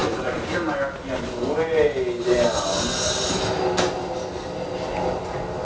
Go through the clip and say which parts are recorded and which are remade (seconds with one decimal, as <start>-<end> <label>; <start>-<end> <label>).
0.0-5.6 recorded

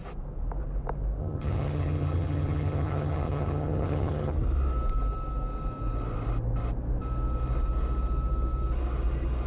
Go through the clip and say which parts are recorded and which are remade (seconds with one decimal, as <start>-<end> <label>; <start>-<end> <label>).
0.0-1.2 recorded; 1.2-4.3 remade; 4.3-9.5 recorded

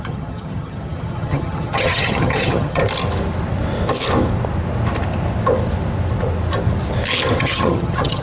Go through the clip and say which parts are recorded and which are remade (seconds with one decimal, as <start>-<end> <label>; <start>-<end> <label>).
0.0-2.8 remade; 2.8-7.4 recorded; 7.4-8.2 remade